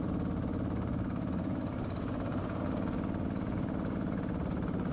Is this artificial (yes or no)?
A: no